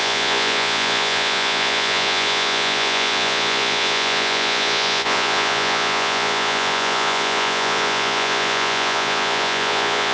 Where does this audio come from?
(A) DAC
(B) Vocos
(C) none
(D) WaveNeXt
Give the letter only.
B